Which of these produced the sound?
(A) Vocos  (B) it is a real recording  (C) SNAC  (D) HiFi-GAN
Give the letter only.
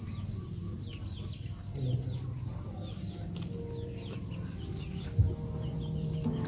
B